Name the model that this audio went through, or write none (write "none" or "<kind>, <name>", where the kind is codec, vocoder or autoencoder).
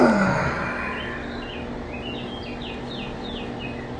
none